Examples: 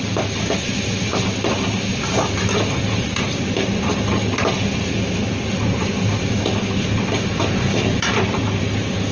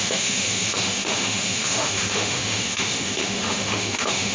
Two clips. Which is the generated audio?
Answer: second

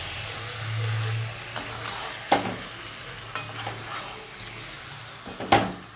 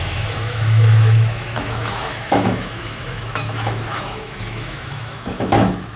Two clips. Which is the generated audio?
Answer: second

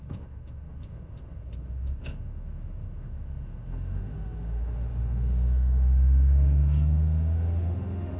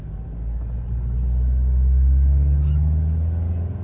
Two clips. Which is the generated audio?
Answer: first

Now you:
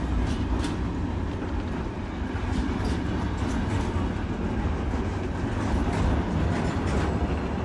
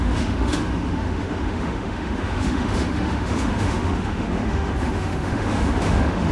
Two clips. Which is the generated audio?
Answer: second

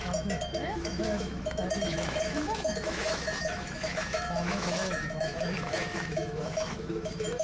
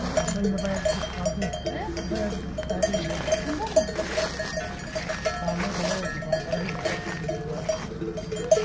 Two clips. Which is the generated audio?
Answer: first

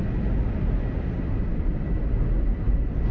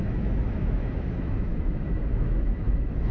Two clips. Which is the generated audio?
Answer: second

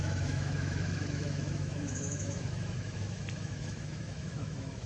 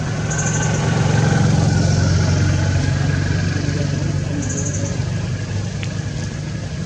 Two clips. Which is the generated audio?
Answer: first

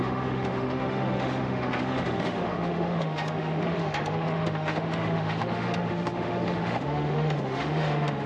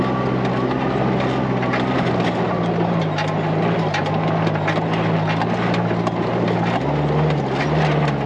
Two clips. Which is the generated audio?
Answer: first